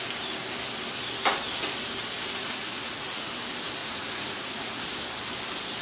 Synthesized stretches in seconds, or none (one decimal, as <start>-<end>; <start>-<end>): 2.4-3.3; 3.8-4.8